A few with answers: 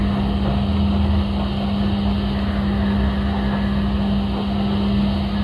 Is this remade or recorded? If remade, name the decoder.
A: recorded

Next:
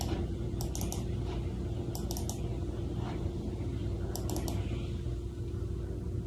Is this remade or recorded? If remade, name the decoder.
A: recorded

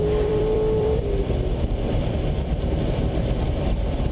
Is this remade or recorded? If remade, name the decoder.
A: remade, vocoder, BigVGAN v2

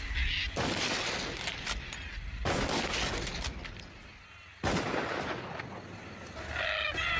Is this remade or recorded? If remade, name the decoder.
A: recorded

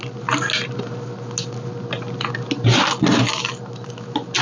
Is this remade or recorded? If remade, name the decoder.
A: recorded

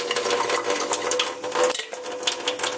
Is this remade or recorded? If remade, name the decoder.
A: recorded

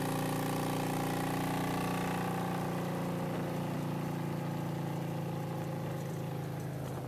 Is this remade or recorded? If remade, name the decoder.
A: recorded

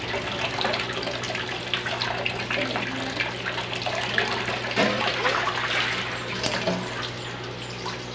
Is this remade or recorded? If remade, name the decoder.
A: recorded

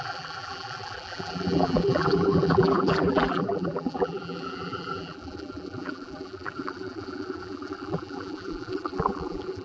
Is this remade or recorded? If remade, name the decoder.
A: remade, vocoder, BigVGAN v2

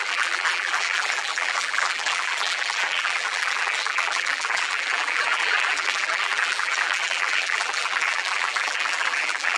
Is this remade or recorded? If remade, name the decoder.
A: remade, vocoder, BigVGAN v2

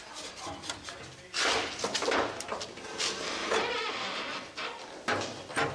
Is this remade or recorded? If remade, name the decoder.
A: remade, vocoder, BigVGAN v2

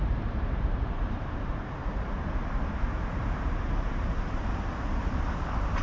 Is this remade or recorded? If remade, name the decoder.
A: remade, vocoder, BigVGAN v2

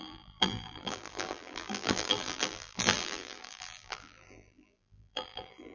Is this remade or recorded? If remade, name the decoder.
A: remade, vocoder, BigVGAN v2